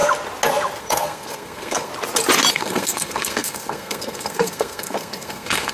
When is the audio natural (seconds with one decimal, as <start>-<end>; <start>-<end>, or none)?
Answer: 0.0-0.8; 1.9-2.5